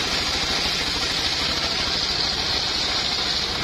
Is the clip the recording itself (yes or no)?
yes